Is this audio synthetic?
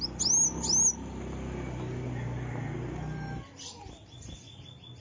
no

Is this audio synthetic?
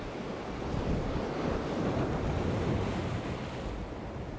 no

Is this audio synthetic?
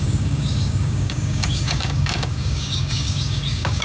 yes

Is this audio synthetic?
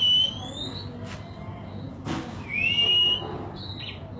no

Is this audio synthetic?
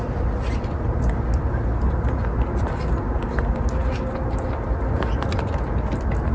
no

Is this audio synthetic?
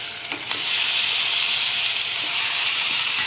yes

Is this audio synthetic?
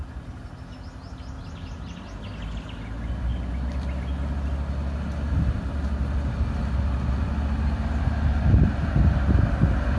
no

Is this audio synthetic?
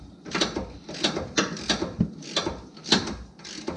no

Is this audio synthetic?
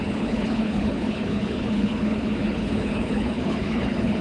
yes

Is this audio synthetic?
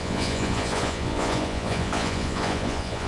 yes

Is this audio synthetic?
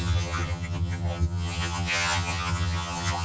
yes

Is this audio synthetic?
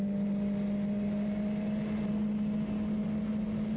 no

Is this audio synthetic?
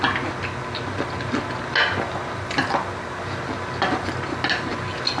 no